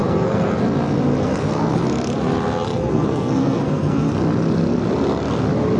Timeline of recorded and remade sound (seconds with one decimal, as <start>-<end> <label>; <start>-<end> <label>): 0.0-0.6 remade; 0.6-1.2 recorded; 1.2-1.8 remade; 1.8-2.8 recorded; 2.8-4.1 remade; 4.1-5.8 recorded